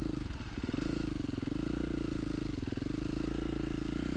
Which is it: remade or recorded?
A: recorded